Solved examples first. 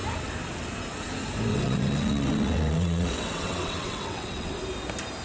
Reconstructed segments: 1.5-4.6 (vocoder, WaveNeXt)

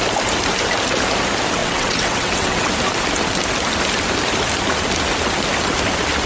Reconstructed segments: 1.6-2.7 (vocoder, WaveNeXt)

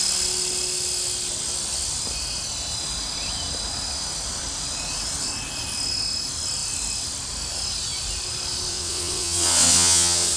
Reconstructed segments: 8.7-10.4 (vocoder, WaveNeXt)

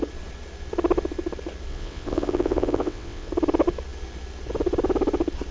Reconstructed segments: 1.7-3.3 (vocoder, WaveNeXt)

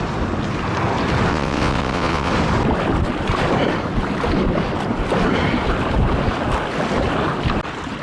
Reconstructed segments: 1.3-2.3 (vocoder, WaveNeXt)